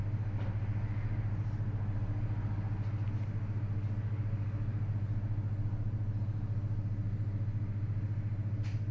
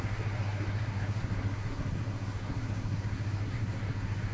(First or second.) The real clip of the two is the first